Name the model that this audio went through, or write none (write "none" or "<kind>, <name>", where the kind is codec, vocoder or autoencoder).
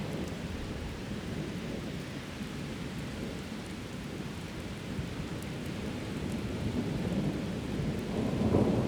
vocoder, BigVGAN v2